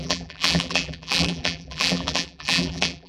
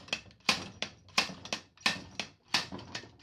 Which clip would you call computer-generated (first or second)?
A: first